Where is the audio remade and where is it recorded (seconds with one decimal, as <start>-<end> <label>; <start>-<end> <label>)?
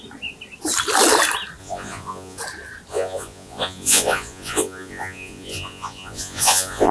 0.0-1.6 recorded; 1.6-2.4 remade; 2.4-2.9 recorded; 2.9-6.9 remade